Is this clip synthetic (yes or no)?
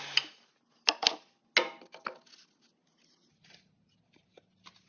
no